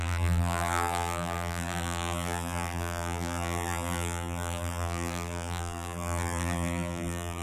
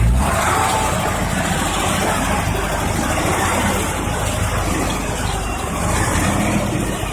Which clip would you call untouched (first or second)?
second